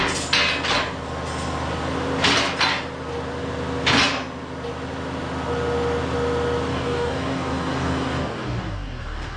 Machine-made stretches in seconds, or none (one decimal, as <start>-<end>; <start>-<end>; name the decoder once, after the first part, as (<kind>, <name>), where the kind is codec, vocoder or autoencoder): 6.7-9.4 (codec, DAC)